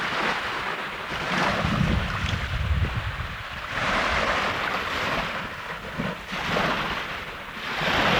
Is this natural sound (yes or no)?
yes